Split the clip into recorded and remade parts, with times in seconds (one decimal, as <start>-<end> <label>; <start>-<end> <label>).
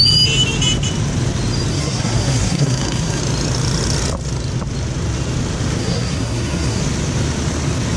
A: 0.0-1.7 recorded; 1.7-3.2 remade; 3.2-5.8 recorded; 5.8-6.8 remade; 6.8-8.0 recorded